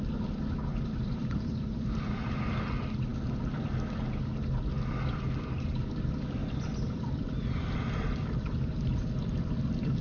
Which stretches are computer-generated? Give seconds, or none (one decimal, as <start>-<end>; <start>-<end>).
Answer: 0.7-2.2